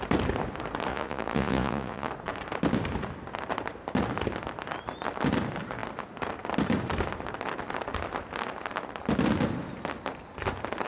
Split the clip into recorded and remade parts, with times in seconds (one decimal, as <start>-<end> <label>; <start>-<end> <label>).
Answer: 0.0-0.9 recorded; 0.9-2.1 remade; 2.1-10.9 recorded